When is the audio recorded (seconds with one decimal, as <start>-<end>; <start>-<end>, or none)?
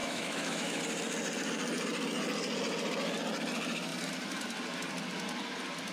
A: 0.8-5.9